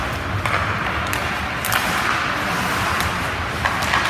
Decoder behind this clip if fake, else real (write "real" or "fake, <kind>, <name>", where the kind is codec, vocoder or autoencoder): real